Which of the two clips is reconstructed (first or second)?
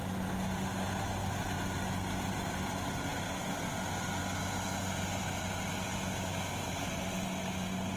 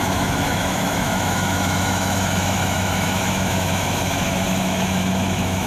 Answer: second